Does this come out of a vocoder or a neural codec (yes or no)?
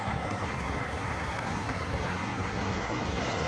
yes